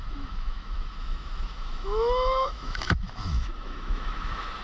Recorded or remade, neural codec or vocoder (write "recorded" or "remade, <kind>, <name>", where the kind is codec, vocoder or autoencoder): remade, autoencoder, DAC-VAE